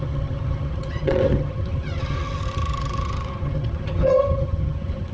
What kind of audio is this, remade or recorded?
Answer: remade